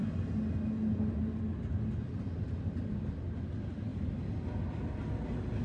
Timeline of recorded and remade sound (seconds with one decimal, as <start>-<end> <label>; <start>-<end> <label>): 0.0-5.6 recorded